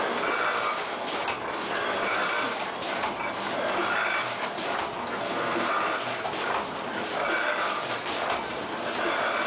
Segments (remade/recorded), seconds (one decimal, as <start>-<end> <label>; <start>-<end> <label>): 0.0-5.0 recorded; 5.0-5.7 remade; 5.7-9.5 recorded